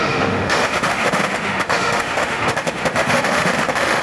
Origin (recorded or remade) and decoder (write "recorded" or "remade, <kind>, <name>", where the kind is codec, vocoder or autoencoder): remade, autoencoder, DAC-VAE